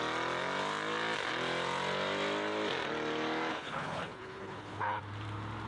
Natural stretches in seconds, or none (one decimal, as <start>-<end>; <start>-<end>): 0.0-3.5; 5.0-5.7